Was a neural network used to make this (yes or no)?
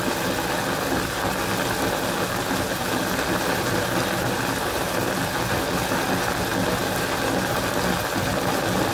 no